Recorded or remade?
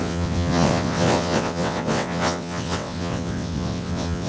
remade